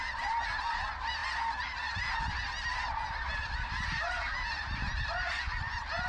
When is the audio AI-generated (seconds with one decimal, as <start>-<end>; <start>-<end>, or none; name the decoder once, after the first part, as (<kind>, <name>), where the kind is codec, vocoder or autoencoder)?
0.0-6.1 (vocoder, BigVGAN v2)